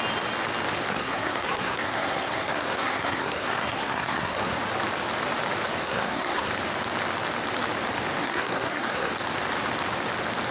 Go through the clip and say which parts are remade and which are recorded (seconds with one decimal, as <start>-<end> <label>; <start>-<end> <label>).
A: 0.0-0.9 recorded; 0.9-4.6 remade; 4.6-5.8 recorded; 5.8-6.5 remade; 6.5-8.2 recorded; 8.2-9.1 remade; 9.1-10.5 recorded